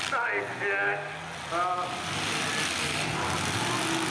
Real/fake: real